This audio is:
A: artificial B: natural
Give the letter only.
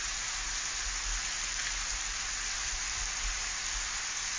B